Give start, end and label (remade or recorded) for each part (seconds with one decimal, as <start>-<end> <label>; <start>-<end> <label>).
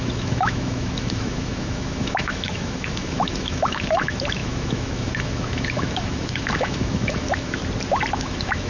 0.0-7.6 remade; 7.6-8.1 recorded; 8.1-8.7 remade